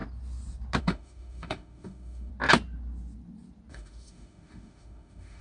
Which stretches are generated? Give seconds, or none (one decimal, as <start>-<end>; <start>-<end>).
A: 0.8-2.3; 3.7-5.4